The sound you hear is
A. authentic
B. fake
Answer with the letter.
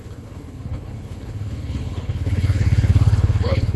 B